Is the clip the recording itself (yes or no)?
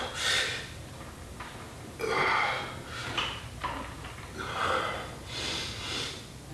yes